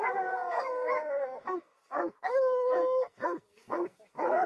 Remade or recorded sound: remade